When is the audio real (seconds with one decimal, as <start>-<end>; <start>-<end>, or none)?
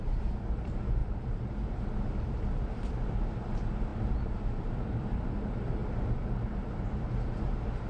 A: 5.8-6.7